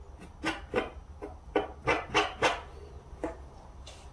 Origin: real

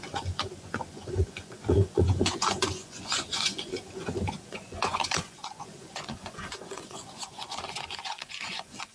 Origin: fake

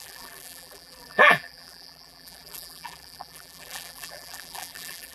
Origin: fake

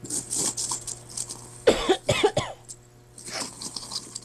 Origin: real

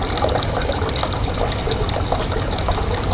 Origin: real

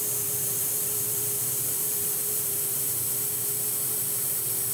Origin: fake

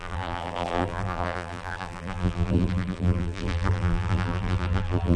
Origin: fake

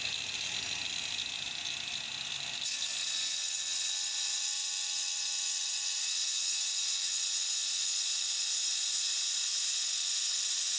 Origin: real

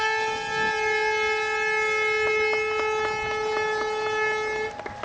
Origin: real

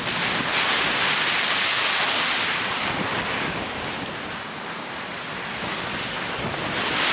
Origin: real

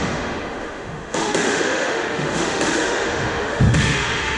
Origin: fake